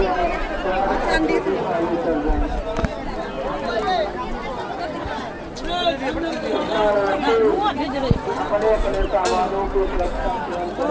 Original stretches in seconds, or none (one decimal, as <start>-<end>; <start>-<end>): 0.0-10.9